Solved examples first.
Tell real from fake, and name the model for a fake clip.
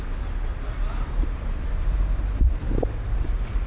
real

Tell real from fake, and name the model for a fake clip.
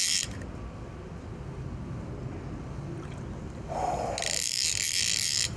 real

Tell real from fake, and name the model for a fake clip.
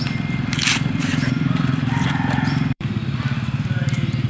fake, vocoder, BigVGAN v2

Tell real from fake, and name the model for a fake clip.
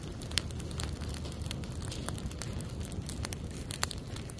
real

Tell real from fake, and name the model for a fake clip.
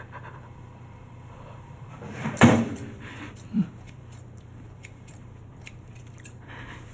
fake, vocoder, BigVGAN v2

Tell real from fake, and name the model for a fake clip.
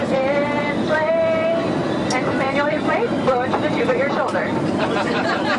fake, vocoder, BigVGAN v2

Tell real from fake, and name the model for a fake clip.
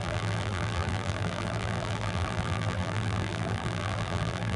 fake, vocoder, BigVGAN v2